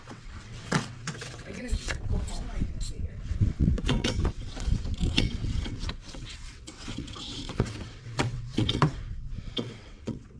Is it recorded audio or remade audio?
remade